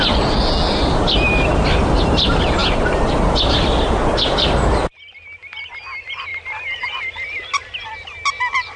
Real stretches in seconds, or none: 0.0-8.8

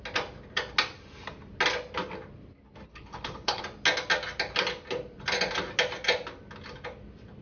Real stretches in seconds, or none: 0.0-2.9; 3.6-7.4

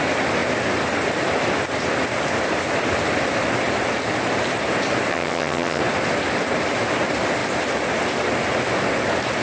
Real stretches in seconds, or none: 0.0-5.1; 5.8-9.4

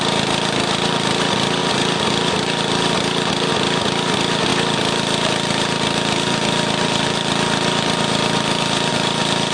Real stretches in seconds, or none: 0.0-9.5

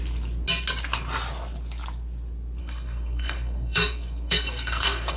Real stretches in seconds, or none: 0.0-2.6

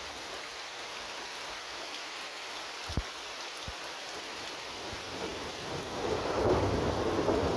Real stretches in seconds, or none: 0.0-7.6

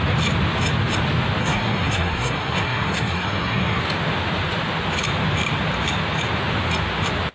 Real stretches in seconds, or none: 0.0-1.4; 3.8-7.3